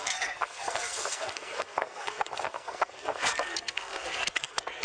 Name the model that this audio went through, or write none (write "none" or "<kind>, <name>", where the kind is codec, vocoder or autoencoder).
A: codec, SNAC